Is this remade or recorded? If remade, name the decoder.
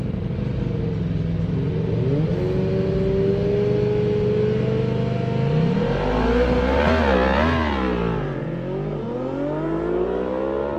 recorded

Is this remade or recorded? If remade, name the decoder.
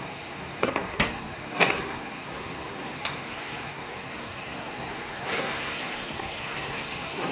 remade, codec, SNAC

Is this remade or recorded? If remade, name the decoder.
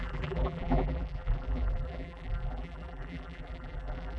remade, vocoder, BigVGAN v2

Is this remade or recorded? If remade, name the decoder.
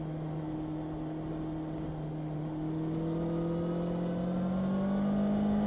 recorded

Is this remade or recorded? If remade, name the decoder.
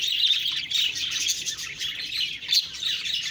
recorded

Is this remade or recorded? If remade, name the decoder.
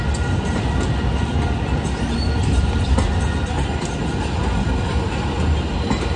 recorded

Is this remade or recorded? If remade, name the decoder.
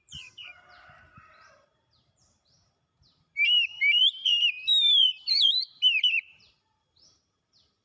remade, vocoder, BigVGAN v2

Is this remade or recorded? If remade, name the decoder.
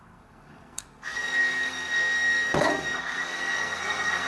remade, codec, SNAC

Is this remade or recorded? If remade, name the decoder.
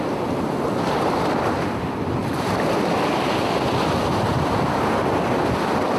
recorded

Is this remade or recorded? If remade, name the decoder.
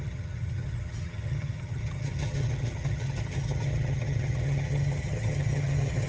remade, vocoder, HiFi-GAN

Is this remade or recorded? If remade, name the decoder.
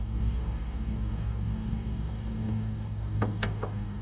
remade, codec, DAC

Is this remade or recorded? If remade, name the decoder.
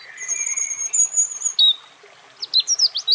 recorded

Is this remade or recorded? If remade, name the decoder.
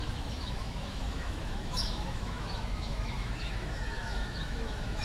remade, autoencoder, DAC-VAE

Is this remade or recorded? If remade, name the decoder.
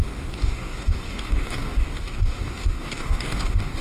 remade, codec, DAC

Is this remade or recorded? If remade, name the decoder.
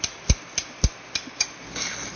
recorded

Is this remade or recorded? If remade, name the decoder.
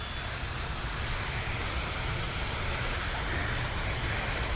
recorded